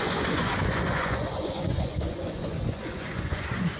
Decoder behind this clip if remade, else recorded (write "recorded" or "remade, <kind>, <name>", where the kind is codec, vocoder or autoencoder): remade, vocoder, Vocos